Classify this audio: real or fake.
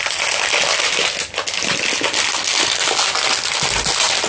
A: real